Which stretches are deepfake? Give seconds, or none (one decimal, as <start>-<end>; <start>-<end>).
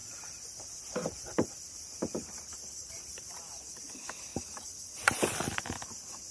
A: 0.0-3.8; 4.3-5.7